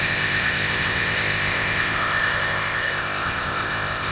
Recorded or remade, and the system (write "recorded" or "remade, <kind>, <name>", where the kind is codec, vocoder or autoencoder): remade, codec, ZipCodec